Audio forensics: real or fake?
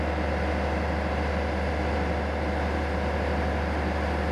real